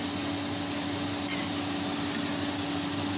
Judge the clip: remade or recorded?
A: recorded